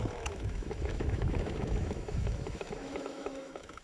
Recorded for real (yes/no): no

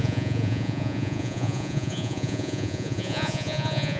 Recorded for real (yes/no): no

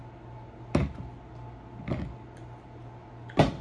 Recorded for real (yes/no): yes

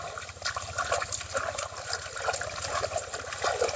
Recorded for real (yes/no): yes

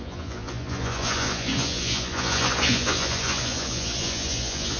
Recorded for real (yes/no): no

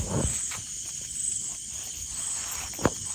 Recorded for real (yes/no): yes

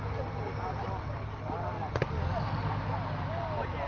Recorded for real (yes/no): yes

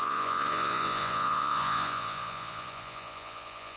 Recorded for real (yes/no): no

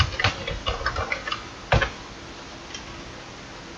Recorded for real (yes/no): yes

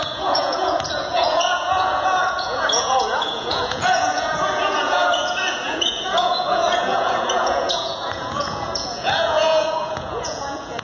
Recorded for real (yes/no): no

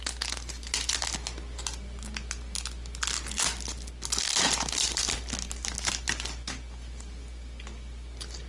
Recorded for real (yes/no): yes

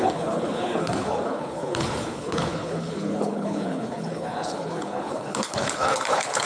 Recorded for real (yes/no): no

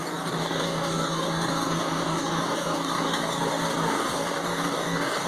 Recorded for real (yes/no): no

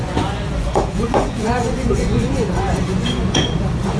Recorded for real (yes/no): no